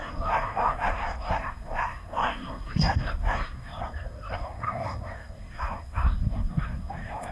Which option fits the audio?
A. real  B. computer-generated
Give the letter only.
B